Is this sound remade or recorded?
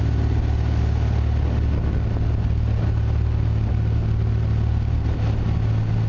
recorded